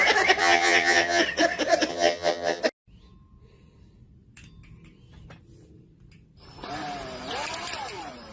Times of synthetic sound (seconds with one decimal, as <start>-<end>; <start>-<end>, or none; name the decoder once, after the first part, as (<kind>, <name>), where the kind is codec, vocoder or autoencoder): 0.4-1.2 (vocoder, HiFi-GAN); 1.9-2.6